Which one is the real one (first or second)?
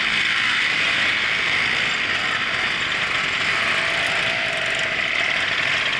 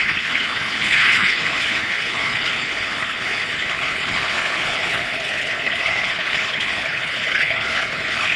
first